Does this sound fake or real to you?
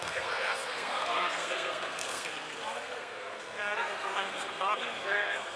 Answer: fake